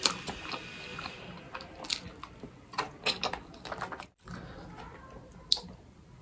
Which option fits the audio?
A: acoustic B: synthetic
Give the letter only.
A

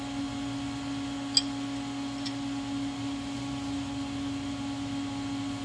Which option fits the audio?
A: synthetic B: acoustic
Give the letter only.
B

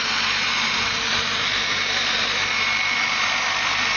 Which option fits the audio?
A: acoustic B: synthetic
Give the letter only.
A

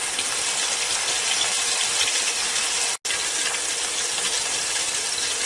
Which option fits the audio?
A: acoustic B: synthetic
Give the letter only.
A